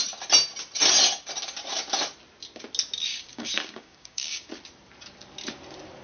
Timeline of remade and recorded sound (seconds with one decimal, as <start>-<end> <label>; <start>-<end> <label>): 0.0-3.1 recorded; 3.1-4.5 remade; 4.5-6.0 recorded